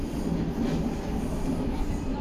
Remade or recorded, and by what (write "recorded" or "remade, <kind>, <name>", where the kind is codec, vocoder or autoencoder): recorded